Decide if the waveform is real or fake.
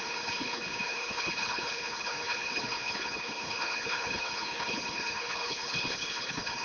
fake